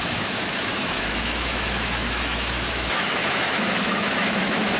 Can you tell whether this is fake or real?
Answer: fake